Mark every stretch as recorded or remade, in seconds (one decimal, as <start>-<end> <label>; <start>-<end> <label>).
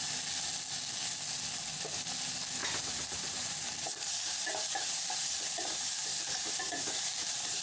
0.0-2.6 recorded; 2.6-7.6 remade